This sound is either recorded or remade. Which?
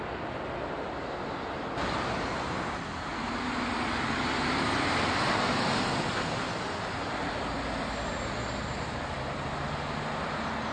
recorded